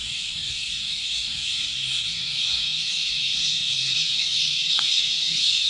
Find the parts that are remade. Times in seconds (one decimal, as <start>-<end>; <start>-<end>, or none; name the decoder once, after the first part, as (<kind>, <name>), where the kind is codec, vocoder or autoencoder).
0.0-5.7 (codec, DAC)